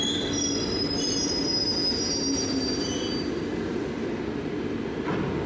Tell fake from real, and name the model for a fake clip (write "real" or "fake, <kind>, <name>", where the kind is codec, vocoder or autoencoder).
real